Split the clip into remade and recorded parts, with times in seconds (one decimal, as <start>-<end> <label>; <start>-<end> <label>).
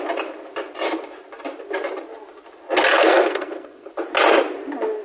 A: 0.0-2.9 recorded; 2.9-3.9 remade; 3.9-5.0 recorded